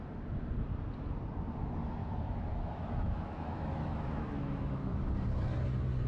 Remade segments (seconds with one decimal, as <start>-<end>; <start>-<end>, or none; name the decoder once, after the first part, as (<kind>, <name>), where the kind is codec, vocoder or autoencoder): 2.0-4.9 (autoencoder, DAC-VAE)